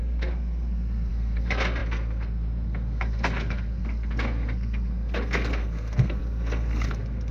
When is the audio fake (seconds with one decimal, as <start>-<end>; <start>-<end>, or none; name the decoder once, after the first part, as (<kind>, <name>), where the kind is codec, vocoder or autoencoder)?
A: 0.0-7.3 (codec, SNAC)